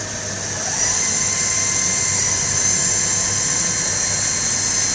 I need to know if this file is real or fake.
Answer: real